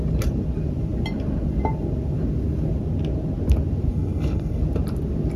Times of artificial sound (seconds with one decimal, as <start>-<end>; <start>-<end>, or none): 3.9-4.6